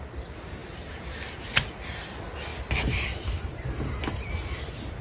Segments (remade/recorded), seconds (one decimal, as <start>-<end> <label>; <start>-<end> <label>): 0.0-5.0 recorded